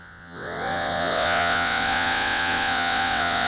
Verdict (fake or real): fake